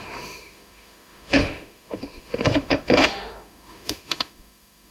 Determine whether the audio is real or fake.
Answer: fake